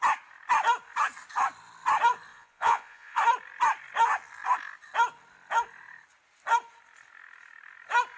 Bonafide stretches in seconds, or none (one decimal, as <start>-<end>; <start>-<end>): 0.0-2.3; 3.2-8.2